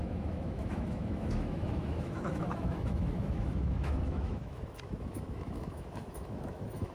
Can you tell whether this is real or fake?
fake